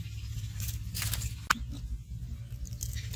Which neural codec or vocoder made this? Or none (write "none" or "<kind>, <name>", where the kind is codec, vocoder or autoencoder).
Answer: none